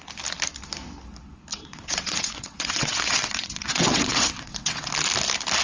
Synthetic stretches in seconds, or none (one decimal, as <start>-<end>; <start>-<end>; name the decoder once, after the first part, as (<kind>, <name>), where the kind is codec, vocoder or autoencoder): 1.5-4.9 (vocoder, WaveNeXt)